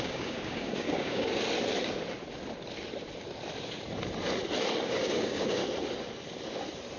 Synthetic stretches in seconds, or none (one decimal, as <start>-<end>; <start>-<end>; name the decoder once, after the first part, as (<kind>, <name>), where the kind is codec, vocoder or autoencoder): 0.0-1.3 (codec, DAC); 4.9-5.6